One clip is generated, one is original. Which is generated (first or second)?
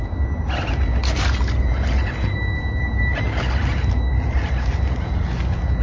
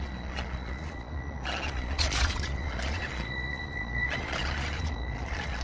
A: second